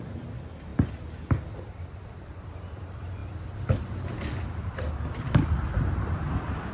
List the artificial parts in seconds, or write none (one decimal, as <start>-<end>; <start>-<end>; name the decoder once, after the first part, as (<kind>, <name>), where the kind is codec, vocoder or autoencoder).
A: 0.0-0.7 (vocoder, BigVGAN v2); 1.6-6.7